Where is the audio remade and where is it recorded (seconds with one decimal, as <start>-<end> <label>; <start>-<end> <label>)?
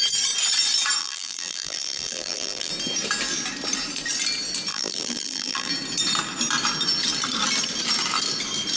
0.0-1.0 recorded; 1.0-2.7 remade; 2.7-4.7 recorded; 4.7-5.7 remade; 5.7-8.8 recorded